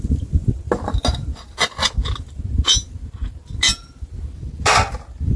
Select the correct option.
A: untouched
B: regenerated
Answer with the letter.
A